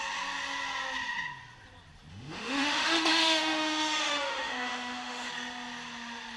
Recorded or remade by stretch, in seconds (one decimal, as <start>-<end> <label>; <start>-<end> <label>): 0.0-2.1 recorded; 2.1-5.3 remade; 5.3-6.4 recorded